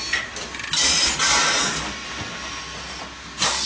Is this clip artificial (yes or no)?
no